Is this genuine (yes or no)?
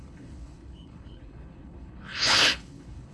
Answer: no